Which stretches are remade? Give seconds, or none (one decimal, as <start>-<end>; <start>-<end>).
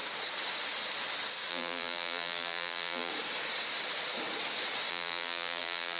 1.5-3.1; 4.9-6.0